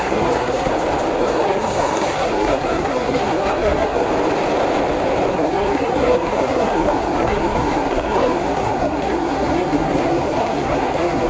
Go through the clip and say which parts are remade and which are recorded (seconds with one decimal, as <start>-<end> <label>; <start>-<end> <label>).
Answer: 0.0-0.7 remade; 0.7-1.2 recorded; 1.2-4.1 remade; 4.1-5.3 recorded; 5.3-11.3 remade